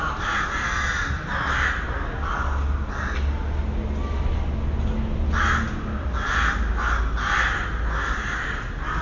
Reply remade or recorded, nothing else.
recorded